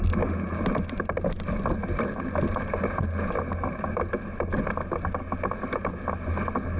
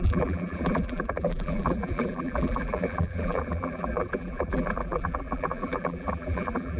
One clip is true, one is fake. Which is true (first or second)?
first